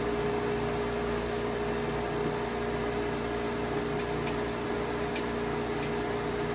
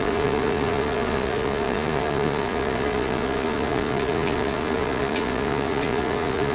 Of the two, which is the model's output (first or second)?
second